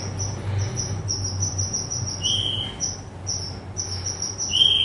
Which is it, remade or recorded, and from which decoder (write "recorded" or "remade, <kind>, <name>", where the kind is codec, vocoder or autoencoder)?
recorded